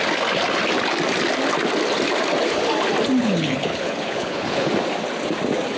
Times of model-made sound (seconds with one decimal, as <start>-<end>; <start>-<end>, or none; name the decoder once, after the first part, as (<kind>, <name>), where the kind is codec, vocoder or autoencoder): 3.2-4.7 (codec, HILCodec)